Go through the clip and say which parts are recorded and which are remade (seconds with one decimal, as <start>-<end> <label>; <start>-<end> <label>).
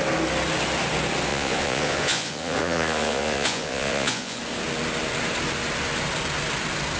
0.0-1.3 recorded; 1.3-4.4 remade; 4.4-7.0 recorded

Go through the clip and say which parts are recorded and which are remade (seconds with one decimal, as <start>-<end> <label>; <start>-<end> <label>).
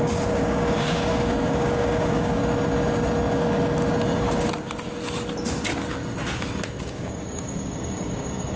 0.0-2.4 remade; 2.4-6.8 recorded; 6.8-8.6 remade